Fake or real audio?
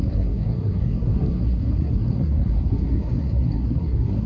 fake